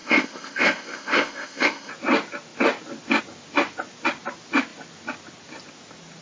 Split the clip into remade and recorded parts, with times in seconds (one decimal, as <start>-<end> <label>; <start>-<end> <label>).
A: 0.0-1.9 remade; 1.9-6.2 recorded